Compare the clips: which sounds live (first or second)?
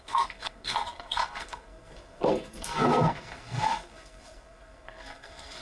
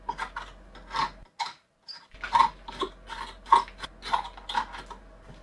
second